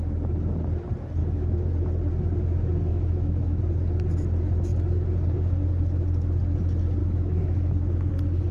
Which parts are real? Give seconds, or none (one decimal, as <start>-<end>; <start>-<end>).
0.0-1.2; 1.7-2.9; 3.6-7.0; 8.1-8.5